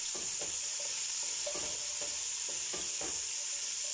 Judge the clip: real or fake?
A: real